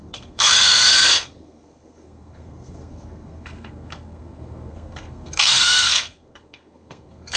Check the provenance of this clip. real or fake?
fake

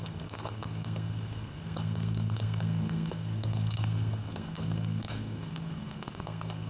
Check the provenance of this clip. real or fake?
fake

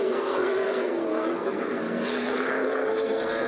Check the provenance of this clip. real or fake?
fake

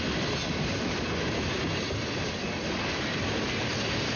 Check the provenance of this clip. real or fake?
real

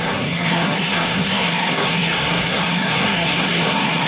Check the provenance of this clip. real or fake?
fake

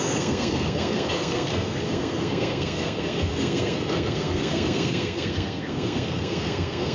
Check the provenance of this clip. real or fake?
fake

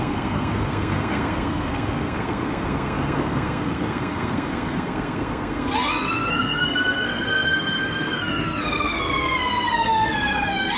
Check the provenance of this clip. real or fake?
fake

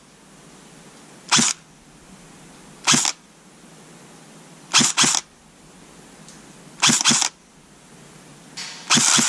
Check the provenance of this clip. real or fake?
real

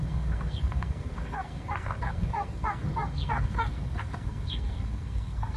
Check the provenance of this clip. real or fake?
fake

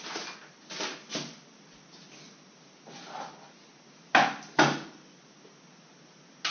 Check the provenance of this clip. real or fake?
real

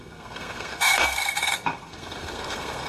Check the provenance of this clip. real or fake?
fake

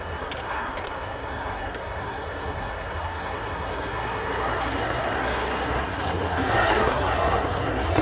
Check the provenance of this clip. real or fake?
fake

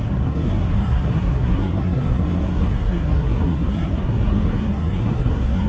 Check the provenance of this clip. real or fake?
fake